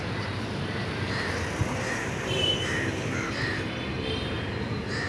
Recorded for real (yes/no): no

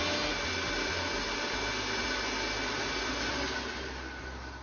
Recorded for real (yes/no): yes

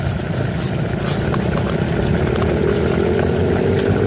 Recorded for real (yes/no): yes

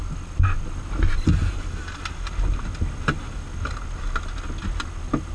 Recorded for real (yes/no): yes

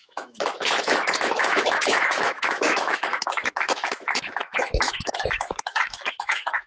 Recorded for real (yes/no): no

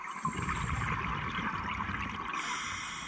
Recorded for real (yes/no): yes